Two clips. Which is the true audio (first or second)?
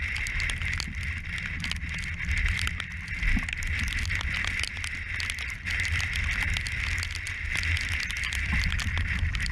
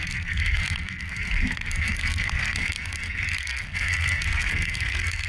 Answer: first